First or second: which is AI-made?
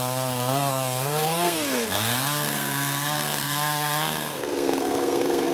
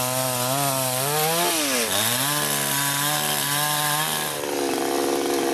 first